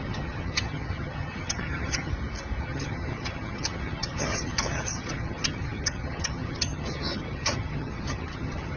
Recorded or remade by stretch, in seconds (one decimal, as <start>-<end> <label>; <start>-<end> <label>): 0.0-2.1 remade; 2.1-2.6 recorded; 2.6-8.8 remade